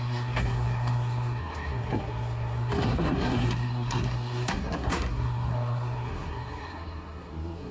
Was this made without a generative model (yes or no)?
no